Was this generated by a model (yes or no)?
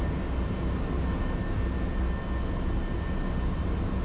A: no